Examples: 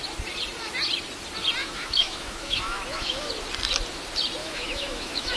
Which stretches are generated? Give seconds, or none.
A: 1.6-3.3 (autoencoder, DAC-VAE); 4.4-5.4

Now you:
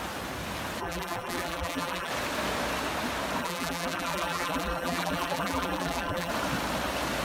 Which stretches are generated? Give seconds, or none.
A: 0.8-2.1 (vocoder, BigVGAN v2); 3.4-6.3

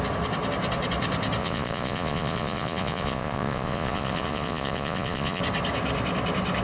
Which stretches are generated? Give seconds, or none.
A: 1.4-5.4 (vocoder, Vocos)